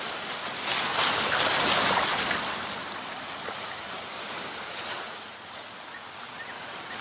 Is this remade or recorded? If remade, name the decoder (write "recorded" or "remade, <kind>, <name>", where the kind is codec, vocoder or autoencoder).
recorded